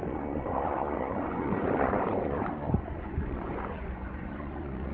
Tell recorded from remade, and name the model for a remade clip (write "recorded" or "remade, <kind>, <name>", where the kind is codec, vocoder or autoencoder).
remade, vocoder, Vocos